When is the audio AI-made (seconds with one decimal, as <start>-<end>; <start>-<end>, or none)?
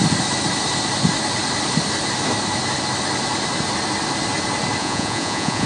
4.8-5.7